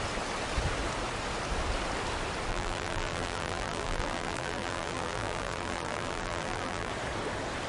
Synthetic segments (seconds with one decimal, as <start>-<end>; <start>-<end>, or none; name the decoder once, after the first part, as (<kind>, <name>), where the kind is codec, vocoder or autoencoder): 2.5-6.9 (vocoder, BigVGAN v2)